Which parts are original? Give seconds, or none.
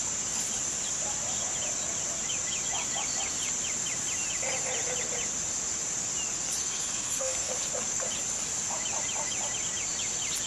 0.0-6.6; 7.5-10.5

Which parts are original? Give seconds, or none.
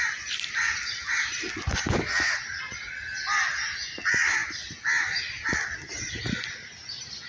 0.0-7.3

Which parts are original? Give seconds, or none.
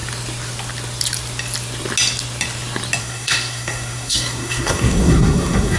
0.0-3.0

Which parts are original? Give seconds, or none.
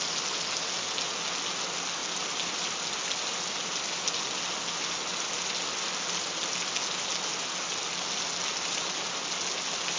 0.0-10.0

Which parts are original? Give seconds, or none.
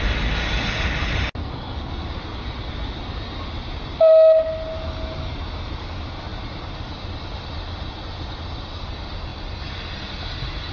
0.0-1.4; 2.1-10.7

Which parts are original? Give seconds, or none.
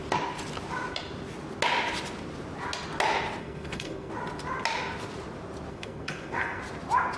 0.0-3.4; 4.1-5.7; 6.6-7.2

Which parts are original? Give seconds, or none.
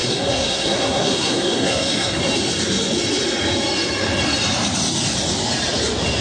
2.2-6.2